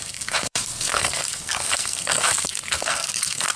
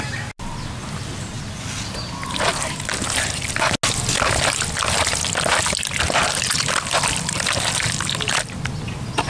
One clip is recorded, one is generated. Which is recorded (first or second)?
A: second